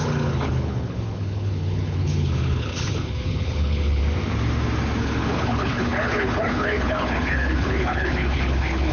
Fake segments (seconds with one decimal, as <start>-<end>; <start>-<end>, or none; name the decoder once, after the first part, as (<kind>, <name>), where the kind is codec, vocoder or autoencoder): 0.0-4.0 (codec, HILCodec); 5.0-8.9

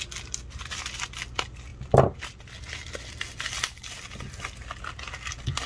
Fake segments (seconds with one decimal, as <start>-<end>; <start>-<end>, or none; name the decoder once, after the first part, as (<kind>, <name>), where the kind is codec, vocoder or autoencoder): none

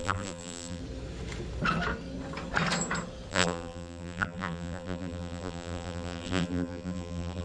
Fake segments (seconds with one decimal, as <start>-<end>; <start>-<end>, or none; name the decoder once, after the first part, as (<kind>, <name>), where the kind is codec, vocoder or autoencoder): 0.0-0.8 (vocoder, BigVGAN v2); 3.3-7.4

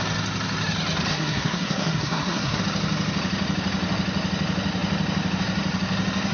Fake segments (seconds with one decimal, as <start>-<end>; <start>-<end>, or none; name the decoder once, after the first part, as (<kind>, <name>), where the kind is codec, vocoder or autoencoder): 1.1-2.6 (codec, SNAC)

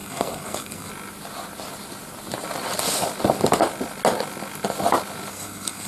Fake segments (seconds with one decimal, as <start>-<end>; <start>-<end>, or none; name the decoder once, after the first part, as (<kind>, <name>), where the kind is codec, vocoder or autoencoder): 0.0-0.9 (codec, SNAC); 5.3-5.9

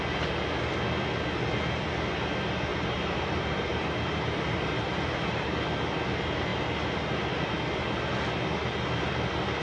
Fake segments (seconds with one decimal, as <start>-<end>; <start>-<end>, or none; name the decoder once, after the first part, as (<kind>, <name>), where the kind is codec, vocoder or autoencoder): 2.7-5.5 (vocoder, BigVGAN v2)

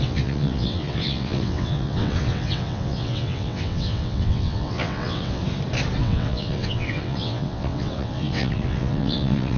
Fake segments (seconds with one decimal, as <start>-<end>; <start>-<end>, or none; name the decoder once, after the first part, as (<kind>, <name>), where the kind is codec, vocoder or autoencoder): 0.0-5.4 (vocoder, WaveNeXt); 6.0-9.6